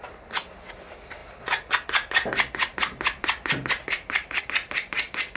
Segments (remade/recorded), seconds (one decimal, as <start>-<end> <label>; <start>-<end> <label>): 0.0-5.4 recorded